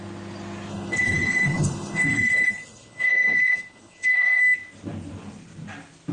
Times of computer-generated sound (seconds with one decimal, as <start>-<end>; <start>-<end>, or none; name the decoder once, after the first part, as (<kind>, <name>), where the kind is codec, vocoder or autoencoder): 0.7-4.4 (codec, HILCodec)